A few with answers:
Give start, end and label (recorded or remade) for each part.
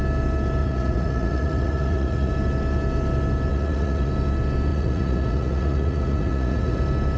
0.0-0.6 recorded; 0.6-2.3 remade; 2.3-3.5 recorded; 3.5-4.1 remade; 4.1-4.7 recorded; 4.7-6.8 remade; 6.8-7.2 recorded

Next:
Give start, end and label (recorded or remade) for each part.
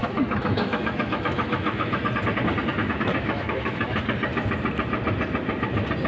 0.0-2.0 remade; 2.0-2.8 recorded; 2.8-4.0 remade; 4.0-6.1 recorded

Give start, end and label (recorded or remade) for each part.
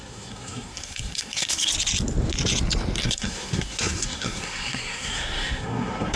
0.0-1.7 remade; 1.7-3.0 recorded; 3.0-6.2 remade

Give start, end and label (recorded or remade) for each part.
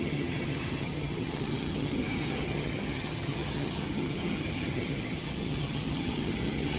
0.0-6.8 remade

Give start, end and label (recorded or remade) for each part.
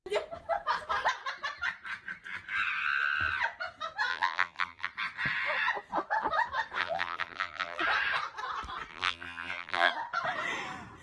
0.0-4.1 recorded; 4.1-4.9 remade; 4.9-6.8 recorded; 6.8-7.8 remade; 7.8-8.9 recorded; 8.9-9.9 remade; 9.9-11.0 recorded